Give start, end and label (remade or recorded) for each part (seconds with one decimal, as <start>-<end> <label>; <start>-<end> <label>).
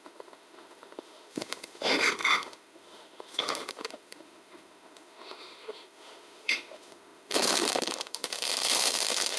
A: 0.0-9.4 remade